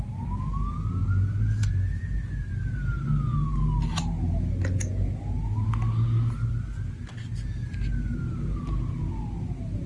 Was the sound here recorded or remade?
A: recorded